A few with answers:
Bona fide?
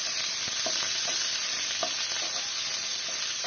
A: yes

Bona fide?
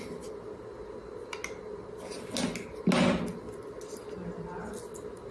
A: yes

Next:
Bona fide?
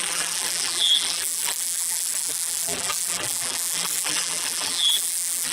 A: no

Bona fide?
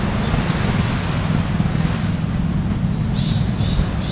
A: yes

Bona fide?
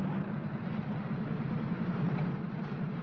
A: yes